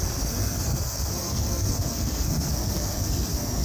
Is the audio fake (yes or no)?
yes